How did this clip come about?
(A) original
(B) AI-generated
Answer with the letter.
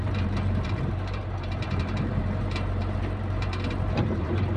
B